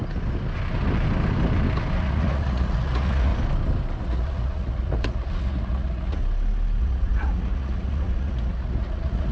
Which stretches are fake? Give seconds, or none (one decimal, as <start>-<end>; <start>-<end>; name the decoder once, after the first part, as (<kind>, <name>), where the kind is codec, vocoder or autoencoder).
2.0-3.3 (vocoder, Vocos); 4.0-6.2; 6.8-9.3